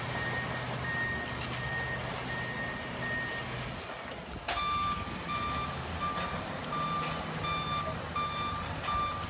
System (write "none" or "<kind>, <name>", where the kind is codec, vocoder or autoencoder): none